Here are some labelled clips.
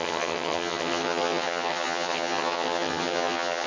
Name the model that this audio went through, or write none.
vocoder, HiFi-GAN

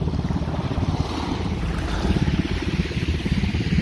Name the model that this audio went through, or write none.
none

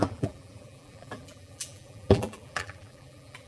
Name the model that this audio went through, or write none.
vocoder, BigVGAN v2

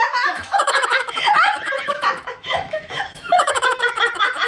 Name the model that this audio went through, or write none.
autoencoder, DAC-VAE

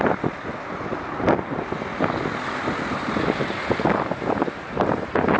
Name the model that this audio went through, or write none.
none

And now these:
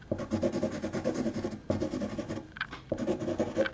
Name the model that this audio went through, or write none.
none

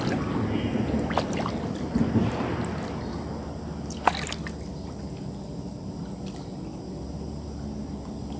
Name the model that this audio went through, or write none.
none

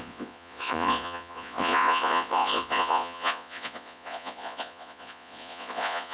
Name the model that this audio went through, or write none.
vocoder, Vocos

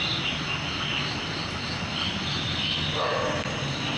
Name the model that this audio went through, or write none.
none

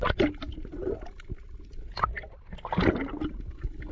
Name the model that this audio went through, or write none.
none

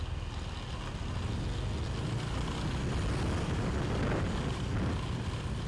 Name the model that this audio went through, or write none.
none